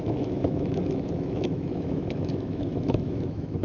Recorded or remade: remade